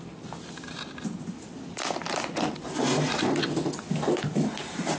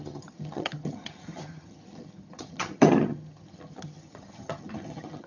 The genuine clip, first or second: first